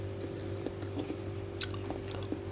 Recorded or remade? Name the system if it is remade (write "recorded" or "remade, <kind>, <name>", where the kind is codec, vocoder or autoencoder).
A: recorded